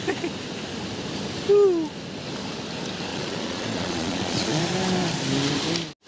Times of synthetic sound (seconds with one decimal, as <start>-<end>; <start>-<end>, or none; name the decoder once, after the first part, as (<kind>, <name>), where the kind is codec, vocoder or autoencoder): 3.1-4.6 (vocoder, Vocos)